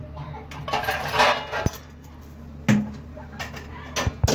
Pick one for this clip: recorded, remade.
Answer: recorded